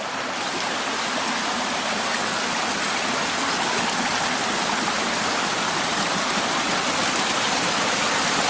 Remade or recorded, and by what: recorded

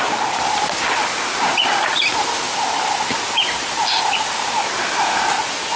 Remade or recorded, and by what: recorded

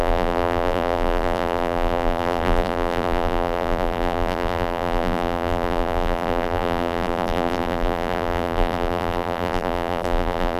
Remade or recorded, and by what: remade, vocoder, BigVGAN v2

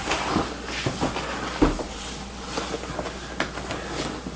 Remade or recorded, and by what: recorded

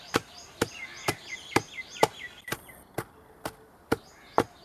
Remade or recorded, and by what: recorded